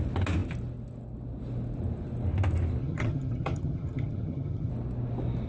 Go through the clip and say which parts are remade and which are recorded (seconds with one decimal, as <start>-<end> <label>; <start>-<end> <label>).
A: 0.0-2.8 recorded; 2.8-4.7 remade; 4.7-5.5 recorded